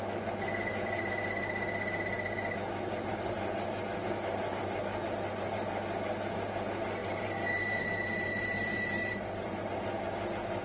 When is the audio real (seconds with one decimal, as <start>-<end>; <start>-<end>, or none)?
0.0-3.1; 3.8-7.0; 9.7-10.6